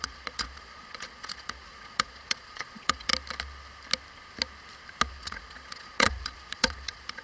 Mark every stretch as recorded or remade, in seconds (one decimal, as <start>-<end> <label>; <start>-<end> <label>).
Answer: 0.0-3.1 remade; 3.1-5.1 recorded; 5.1-7.2 remade